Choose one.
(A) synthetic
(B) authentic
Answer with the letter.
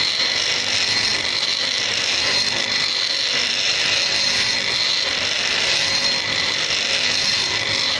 B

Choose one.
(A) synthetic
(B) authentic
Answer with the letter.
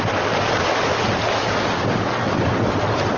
B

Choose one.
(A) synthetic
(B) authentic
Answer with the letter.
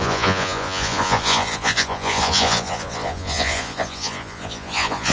A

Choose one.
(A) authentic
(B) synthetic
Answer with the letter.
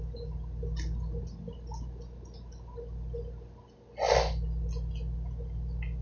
A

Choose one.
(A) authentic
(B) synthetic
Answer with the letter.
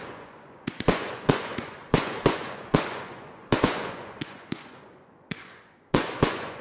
B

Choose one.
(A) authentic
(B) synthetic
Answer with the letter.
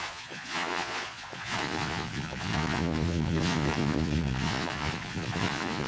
B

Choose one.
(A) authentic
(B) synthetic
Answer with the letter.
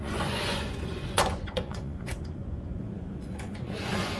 B